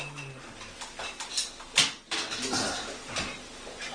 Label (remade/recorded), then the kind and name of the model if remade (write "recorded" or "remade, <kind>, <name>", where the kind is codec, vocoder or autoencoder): recorded